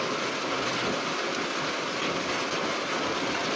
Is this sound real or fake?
real